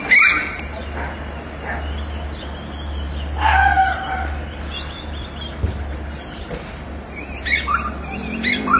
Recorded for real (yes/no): yes